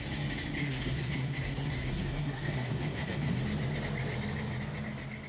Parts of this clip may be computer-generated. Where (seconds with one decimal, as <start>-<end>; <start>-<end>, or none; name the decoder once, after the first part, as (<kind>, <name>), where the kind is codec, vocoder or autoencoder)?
0.6-3.4 (codec, SNAC)